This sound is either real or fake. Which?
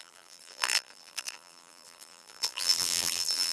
fake